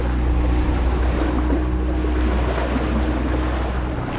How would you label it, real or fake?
real